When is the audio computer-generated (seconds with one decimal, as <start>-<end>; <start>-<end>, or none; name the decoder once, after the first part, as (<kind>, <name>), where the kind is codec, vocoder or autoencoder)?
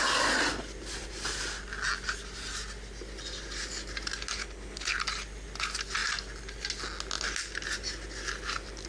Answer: 4.4-5.0 (codec, HILCodec)